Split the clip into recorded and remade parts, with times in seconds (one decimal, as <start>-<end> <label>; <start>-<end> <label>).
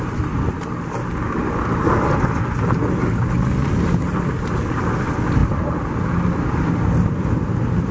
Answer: 0.0-7.9 recorded